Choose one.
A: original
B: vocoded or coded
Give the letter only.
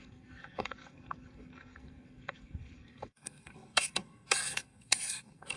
B